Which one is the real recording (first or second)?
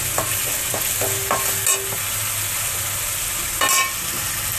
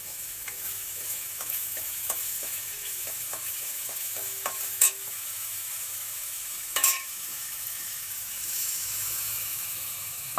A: first